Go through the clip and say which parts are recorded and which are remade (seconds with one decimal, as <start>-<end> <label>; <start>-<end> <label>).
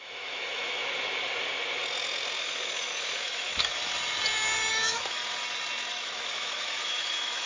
0.0-0.8 remade; 0.8-2.4 recorded; 2.4-3.8 remade; 3.8-4.7 recorded; 4.7-5.2 remade; 5.2-5.9 recorded; 5.9-7.5 remade